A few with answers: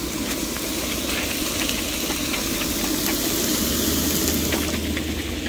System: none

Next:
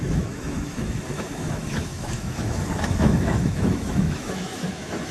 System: autoencoder, DAC-VAE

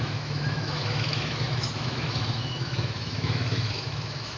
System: autoencoder, DAC-VAE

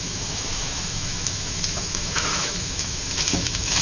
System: autoencoder, DAC-VAE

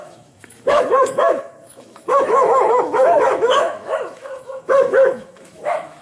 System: autoencoder, DAC-VAE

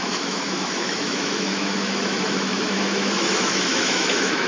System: autoencoder, DAC-VAE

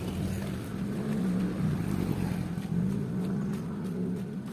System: none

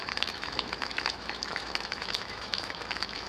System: autoencoder, DAC-VAE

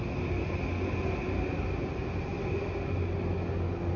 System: none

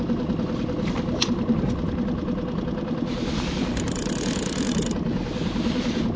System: none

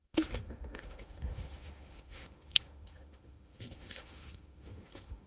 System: autoencoder, DAC-VAE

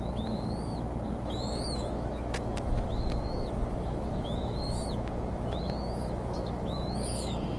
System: autoencoder, DAC-VAE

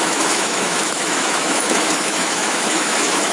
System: autoencoder, DAC-VAE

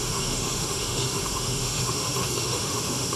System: autoencoder, DAC-VAE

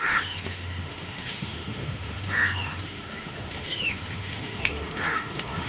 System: autoencoder, DAC-VAE